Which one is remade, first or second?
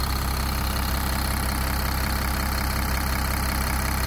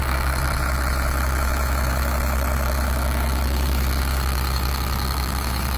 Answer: second